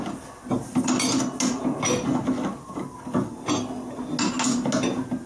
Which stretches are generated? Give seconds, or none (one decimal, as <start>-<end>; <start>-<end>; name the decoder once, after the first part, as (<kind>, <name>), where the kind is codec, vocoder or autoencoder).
none